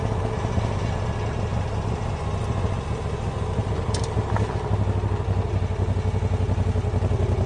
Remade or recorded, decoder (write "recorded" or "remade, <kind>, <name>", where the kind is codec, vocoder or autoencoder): recorded